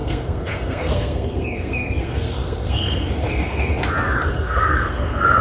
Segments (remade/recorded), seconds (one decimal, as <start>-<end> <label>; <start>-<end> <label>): 0.0-3.7 remade; 3.7-4.3 recorded; 4.3-5.4 remade